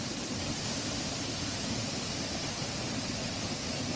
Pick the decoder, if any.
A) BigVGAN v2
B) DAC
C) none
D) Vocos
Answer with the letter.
C